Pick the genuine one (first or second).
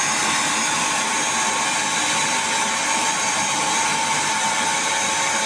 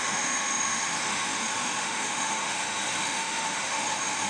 first